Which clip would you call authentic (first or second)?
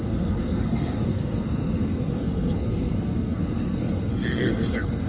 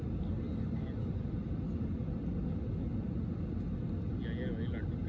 second